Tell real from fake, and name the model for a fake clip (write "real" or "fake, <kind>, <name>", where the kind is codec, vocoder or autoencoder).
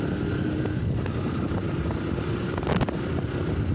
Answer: real